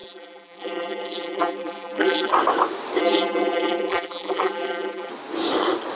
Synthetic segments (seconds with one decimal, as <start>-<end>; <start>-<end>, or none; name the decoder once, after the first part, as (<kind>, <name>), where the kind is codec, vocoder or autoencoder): 0.0-2.3 (vocoder, BigVGAN v2); 3.0-5.1